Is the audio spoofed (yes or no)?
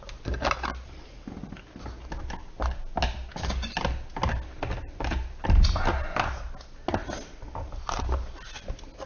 no